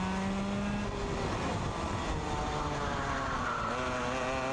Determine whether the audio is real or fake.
real